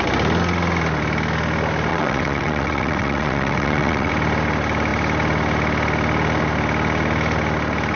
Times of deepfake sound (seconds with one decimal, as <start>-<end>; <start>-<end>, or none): 1.9-4.1